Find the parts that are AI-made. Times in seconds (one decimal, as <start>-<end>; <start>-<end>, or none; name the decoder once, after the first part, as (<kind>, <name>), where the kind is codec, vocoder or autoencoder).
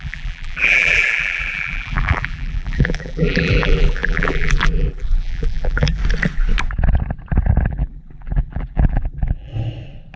0.0-6.0 (vocoder, BigVGAN v2); 7.7-9.5